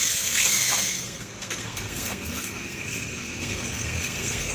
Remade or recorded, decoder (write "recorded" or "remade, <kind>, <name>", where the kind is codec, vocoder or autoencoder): remade, codec, SNAC